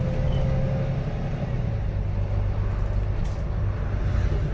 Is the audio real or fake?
real